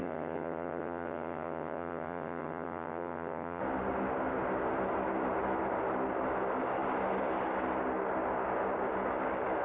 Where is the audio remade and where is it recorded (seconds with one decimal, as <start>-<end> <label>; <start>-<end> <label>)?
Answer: 0.0-3.6 remade; 3.6-9.6 recorded